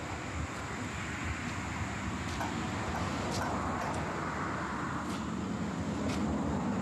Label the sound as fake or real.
real